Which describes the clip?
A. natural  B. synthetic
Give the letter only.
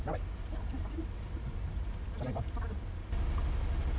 A